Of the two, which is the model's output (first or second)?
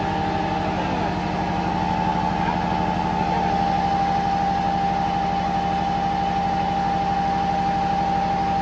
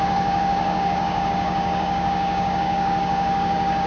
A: second